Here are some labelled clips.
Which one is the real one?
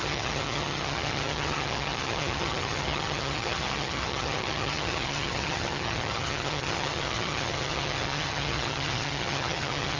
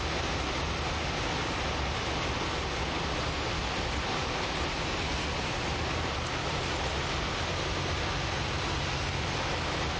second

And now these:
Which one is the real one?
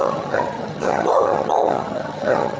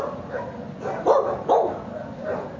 second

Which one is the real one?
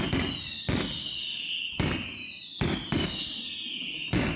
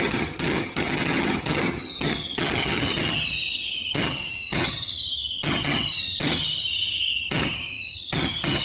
first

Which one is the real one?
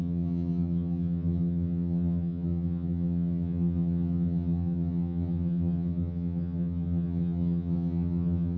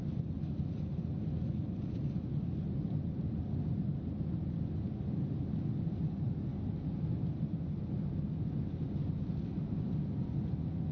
second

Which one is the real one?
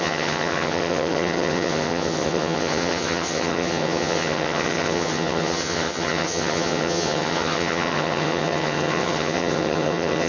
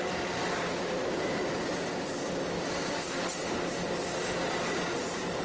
second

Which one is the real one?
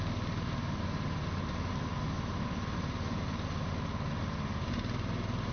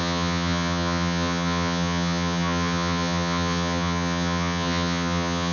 first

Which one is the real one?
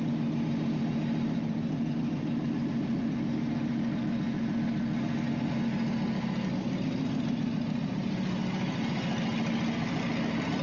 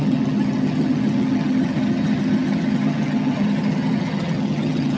first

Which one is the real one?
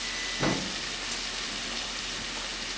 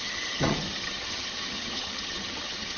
first